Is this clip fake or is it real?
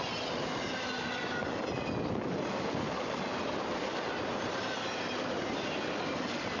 real